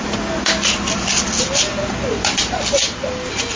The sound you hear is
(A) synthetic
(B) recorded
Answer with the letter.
B